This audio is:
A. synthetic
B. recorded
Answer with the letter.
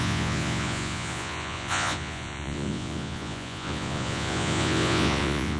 A